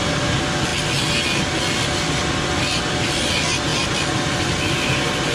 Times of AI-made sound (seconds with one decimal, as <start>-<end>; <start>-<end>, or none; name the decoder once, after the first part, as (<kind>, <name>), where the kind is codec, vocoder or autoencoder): none